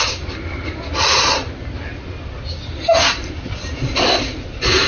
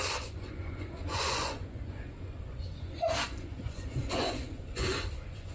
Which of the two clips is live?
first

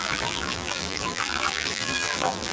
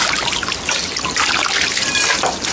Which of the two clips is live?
second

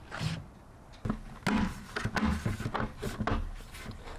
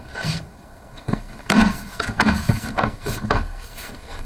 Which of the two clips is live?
first